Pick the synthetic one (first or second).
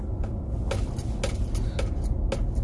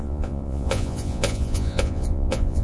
second